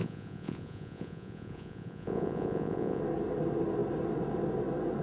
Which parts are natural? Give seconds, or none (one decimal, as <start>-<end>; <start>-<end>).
3.0-5.0